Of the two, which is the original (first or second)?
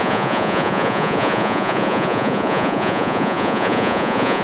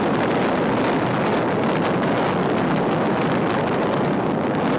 second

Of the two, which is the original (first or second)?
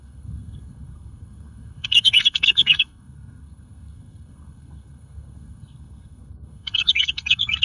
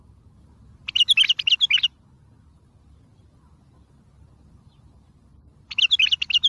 second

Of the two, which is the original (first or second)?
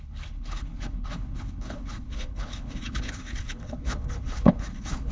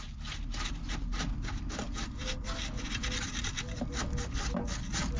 second